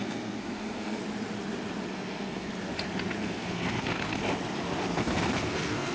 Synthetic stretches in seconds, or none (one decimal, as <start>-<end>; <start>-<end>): 0.0-1.0; 1.9-2.5; 3.2-4.2; 4.9-5.9